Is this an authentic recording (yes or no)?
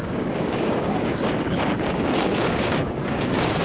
no